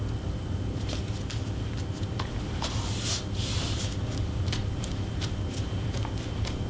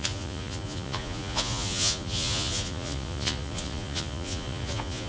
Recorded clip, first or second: first